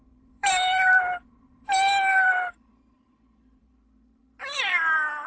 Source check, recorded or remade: remade